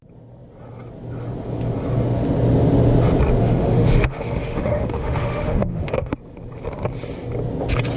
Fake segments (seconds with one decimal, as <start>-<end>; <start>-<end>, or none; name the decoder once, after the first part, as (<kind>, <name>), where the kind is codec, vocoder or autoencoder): 3.4-6.1 (autoencoder, DAC-VAE)